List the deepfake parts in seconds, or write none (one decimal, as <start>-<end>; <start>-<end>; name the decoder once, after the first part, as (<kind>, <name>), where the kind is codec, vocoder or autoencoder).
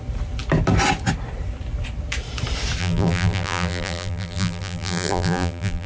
2.8-5.9 (vocoder, BigVGAN v2)